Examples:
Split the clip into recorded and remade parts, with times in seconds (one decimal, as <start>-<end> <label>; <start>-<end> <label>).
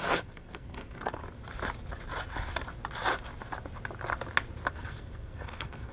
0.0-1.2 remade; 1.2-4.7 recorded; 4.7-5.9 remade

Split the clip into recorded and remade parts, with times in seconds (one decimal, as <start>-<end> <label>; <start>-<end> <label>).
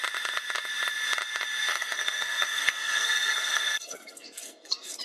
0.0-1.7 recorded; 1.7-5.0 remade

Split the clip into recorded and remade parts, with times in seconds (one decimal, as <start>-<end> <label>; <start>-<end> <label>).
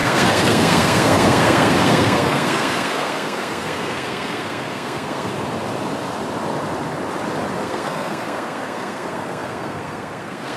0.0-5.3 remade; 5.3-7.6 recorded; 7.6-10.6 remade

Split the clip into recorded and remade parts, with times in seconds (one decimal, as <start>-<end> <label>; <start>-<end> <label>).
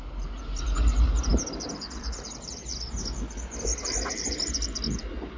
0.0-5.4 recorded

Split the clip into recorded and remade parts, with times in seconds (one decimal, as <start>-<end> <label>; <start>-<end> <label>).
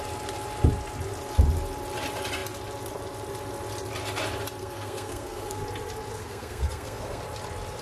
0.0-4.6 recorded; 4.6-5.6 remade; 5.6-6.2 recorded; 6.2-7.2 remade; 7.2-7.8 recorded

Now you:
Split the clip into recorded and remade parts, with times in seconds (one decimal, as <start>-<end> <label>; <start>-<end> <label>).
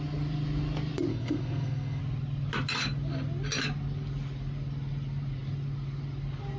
0.0-1.1 recorded; 1.1-2.0 remade; 2.0-6.6 recorded